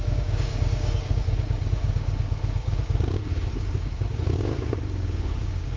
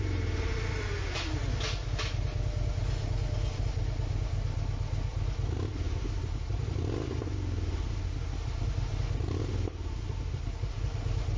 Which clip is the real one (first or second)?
second